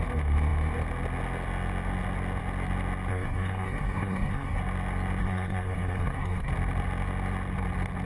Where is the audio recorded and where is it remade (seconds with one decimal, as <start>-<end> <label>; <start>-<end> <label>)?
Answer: 0.0-3.1 recorded; 3.1-4.6 remade; 4.6-5.2 recorded; 5.2-6.5 remade; 6.5-8.0 recorded